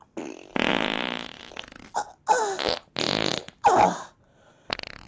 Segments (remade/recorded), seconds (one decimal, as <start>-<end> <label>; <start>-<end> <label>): 0.0-0.5 recorded; 0.5-1.4 remade; 1.4-3.3 recorded; 3.3-4.5 remade; 4.5-5.1 recorded